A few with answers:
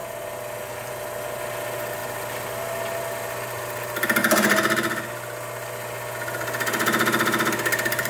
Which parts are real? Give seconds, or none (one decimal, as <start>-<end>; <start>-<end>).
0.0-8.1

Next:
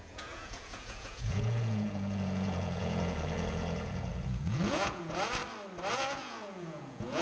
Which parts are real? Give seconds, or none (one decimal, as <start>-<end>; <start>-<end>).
5.4-5.9

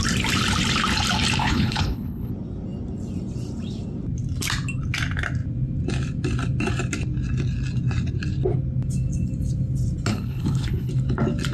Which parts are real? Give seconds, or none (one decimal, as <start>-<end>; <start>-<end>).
0.0-1.4; 2.3-10.1; 10.9-11.5